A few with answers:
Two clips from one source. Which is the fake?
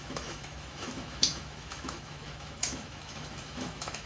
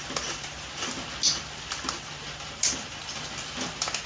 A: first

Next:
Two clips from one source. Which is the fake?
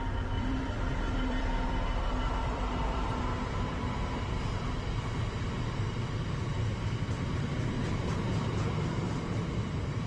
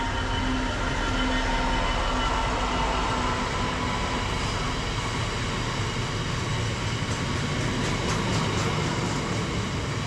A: first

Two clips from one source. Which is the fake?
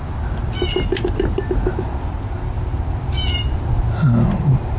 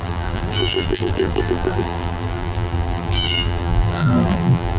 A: second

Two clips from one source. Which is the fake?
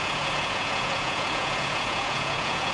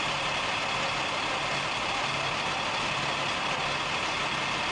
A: first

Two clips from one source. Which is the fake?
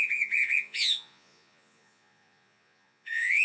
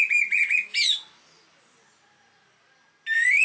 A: first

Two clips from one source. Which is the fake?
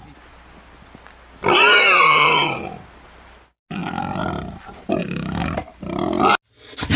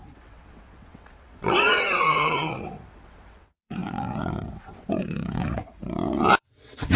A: second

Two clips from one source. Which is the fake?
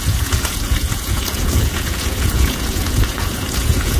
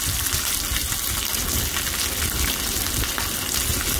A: first